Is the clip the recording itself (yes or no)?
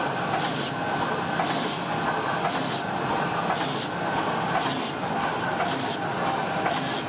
yes